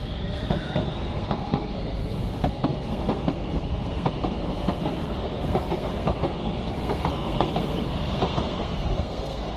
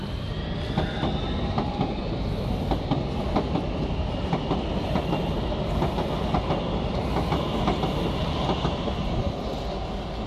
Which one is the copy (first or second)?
first